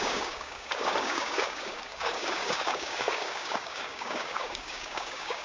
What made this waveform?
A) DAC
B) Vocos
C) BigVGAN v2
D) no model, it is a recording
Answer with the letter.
A